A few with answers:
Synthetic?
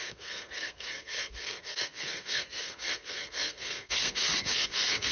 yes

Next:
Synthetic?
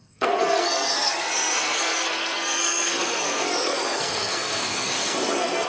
yes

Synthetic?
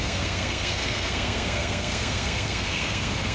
yes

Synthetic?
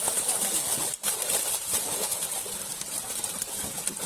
no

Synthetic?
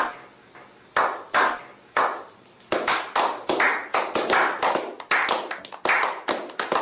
no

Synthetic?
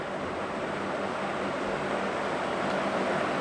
no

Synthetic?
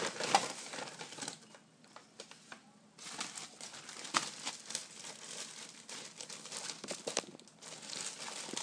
no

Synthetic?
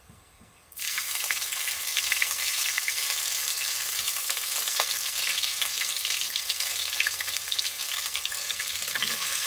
yes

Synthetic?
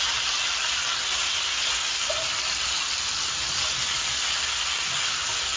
no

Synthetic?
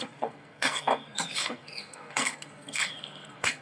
yes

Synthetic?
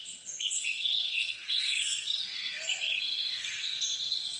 yes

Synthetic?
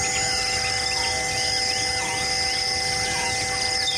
no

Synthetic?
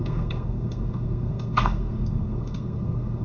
yes